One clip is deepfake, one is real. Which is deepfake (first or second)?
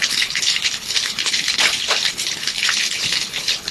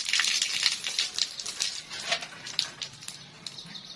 first